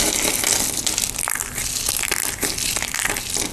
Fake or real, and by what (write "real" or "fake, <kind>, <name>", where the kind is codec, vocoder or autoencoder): real